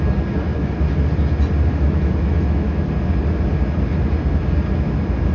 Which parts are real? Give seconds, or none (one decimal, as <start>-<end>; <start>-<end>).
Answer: 0.0-0.4; 1.0-1.7; 2.9-5.3